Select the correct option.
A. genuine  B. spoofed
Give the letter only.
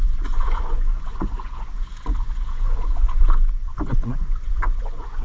B